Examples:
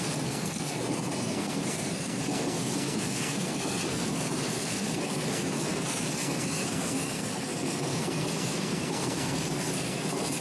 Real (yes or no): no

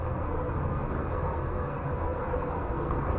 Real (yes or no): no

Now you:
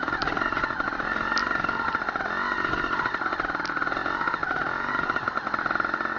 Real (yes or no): yes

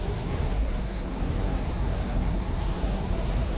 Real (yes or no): no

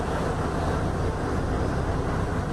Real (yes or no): yes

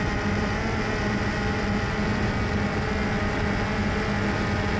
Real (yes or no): yes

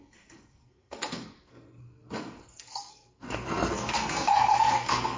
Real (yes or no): no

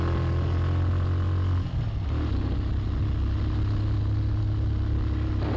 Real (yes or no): yes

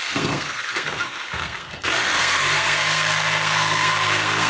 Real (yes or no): no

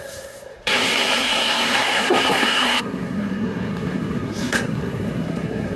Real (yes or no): no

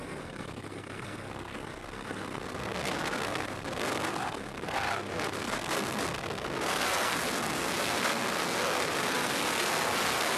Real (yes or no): no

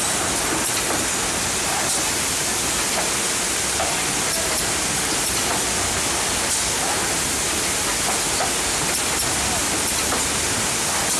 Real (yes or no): yes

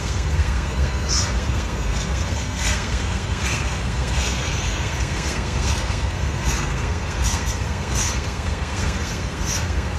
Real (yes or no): no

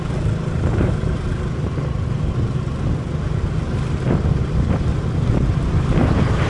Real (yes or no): yes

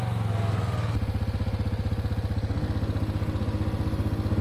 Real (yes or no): yes